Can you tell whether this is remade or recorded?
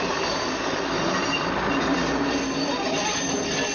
recorded